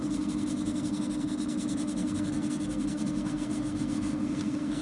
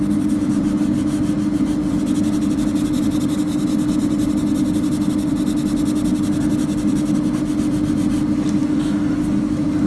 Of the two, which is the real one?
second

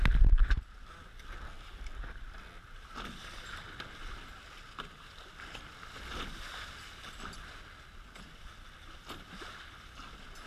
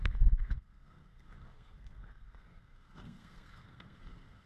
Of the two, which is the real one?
first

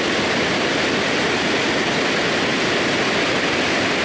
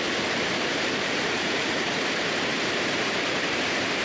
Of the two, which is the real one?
first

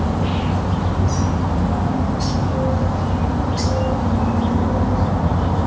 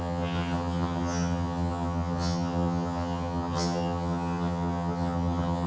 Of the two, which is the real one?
first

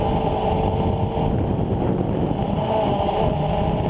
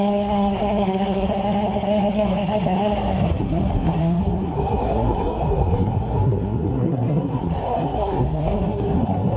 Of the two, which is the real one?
first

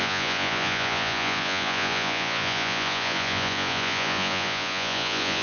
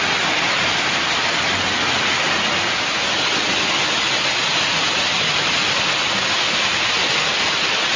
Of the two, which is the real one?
second